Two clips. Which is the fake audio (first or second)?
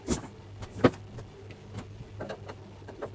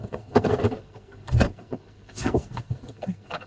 second